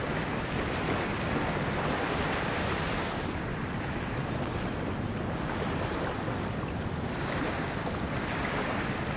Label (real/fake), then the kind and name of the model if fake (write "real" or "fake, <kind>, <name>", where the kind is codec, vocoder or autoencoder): real